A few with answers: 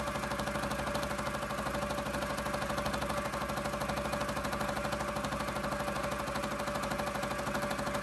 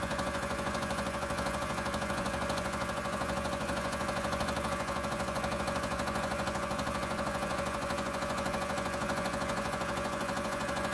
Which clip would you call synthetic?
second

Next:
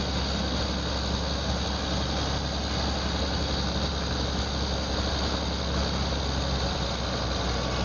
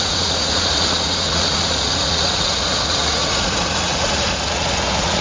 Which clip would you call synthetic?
second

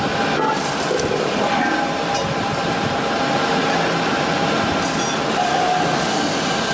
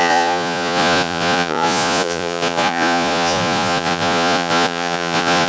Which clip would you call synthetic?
second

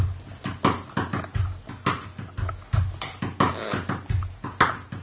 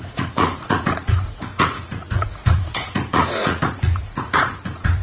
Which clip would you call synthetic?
second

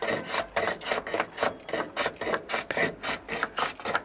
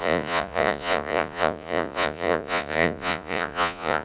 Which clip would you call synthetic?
second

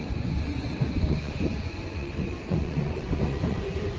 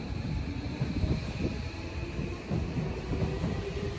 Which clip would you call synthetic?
first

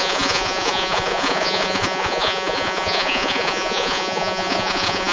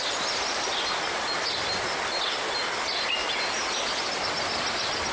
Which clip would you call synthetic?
first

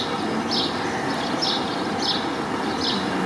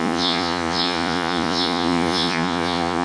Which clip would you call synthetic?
second